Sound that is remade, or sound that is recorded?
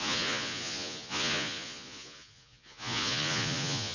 remade